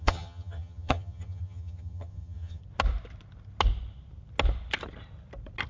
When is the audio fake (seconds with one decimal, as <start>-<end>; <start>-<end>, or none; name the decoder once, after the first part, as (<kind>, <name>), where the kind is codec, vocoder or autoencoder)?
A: 0.0-2.6 (vocoder, HiFi-GAN)